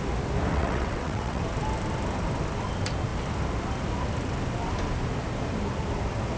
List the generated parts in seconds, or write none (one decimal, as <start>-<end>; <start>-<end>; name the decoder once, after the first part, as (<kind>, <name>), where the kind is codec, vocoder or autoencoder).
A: 0.5-1.4 (vocoder, WaveNeXt)